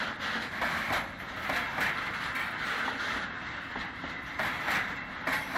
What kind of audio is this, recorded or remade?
recorded